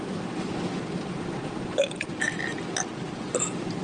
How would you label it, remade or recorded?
recorded